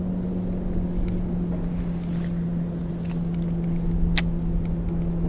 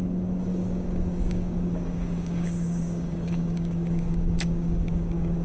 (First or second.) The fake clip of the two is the second